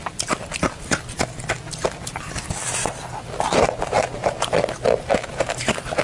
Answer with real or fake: real